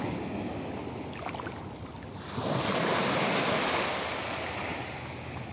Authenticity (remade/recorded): recorded